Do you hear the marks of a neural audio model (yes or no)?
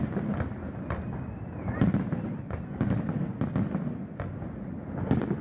no